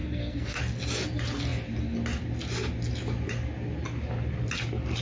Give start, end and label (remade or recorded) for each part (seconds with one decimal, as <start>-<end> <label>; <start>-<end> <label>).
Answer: 0.0-0.6 remade; 0.6-5.0 recorded